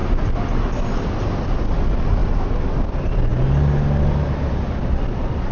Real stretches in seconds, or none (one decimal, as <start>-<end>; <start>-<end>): 0.0-2.2; 2.7-5.5